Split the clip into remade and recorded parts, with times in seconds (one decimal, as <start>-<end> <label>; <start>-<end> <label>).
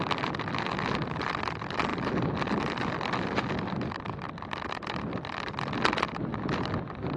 0.0-7.2 recorded